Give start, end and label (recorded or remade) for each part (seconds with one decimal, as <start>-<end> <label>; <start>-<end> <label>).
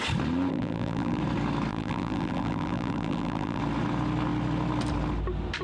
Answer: 0.0-0.5 recorded; 0.5-1.2 remade; 1.2-1.7 recorded; 1.7-3.6 remade; 3.6-5.6 recorded